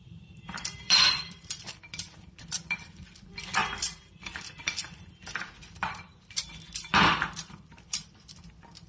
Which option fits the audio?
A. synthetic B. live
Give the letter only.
A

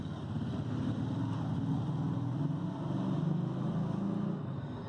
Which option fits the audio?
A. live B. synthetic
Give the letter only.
A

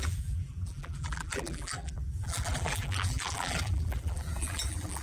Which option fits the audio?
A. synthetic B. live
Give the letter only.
A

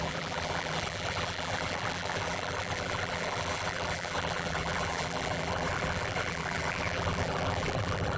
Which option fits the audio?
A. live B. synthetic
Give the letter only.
B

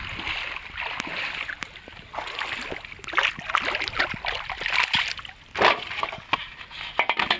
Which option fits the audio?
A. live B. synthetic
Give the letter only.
A